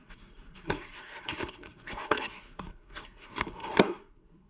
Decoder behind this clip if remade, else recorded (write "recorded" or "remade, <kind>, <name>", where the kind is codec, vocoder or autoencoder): remade, codec, SNAC